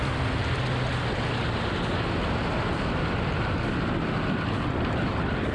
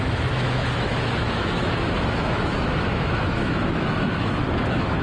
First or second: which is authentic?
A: first